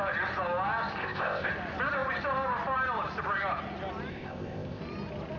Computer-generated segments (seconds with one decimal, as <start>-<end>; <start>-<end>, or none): 1.0-1.5; 4.1-4.8